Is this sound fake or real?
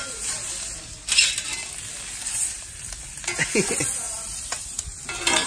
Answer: real